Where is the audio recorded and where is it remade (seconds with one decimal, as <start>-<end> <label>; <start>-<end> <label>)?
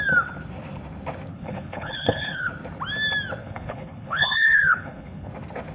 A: 0.0-1.3 recorded; 1.3-2.5 remade; 2.5-3.4 recorded; 3.4-5.3 remade; 5.3-5.7 recorded